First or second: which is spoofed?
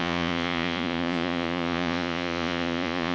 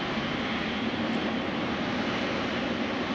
first